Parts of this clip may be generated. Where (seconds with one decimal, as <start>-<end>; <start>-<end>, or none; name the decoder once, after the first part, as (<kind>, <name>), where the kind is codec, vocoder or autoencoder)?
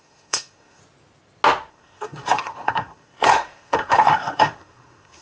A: 0.0-0.8 (codec, SNAC); 1.7-5.2